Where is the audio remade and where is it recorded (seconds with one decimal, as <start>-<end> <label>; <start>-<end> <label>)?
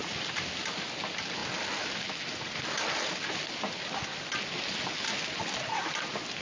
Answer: 0.0-6.4 recorded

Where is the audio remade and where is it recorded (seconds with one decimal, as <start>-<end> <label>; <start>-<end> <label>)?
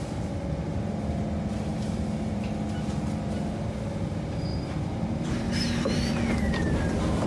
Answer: 0.0-1.7 recorded; 1.7-2.4 remade; 2.4-4.5 recorded; 4.5-6.1 remade; 6.1-7.3 recorded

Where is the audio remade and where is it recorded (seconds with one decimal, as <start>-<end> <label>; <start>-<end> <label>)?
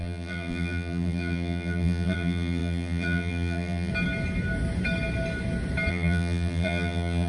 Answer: 0.0-3.9 remade; 3.9-5.9 recorded; 5.9-7.3 remade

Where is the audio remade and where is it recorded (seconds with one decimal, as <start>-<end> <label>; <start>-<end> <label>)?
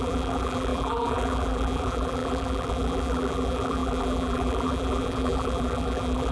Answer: 0.0-6.3 remade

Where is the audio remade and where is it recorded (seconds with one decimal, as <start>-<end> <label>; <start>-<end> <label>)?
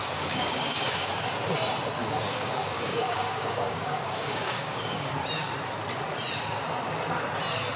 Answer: 0.0-1.1 remade; 1.1-2.0 recorded; 2.0-5.1 remade; 5.1-7.8 recorded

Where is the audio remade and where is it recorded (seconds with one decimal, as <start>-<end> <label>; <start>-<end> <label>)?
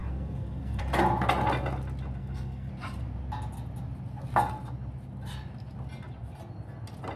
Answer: 0.0-0.8 remade; 0.8-2.2 recorded; 2.2-2.7 remade; 2.7-7.2 recorded